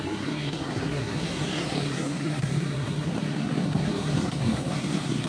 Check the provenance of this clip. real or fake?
fake